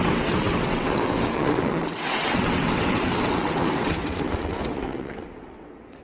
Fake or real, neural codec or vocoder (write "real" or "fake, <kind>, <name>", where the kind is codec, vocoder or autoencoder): fake, vocoder, WaveNeXt